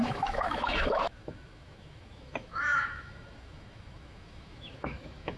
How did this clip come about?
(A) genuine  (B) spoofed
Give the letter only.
B